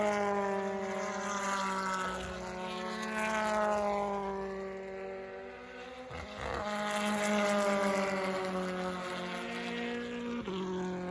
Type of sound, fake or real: real